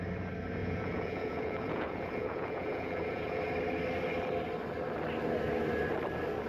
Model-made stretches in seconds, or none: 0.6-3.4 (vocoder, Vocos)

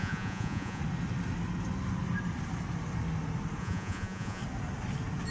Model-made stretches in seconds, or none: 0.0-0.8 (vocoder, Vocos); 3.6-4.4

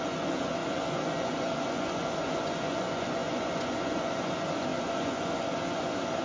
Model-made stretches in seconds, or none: 0.0-6.2 (vocoder, Vocos)

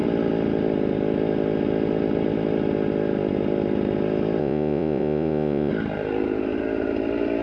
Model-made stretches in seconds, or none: 4.4-5.7 (vocoder, Vocos)